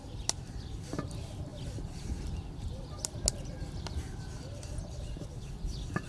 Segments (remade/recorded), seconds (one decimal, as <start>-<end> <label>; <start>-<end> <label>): 0.0-6.1 recorded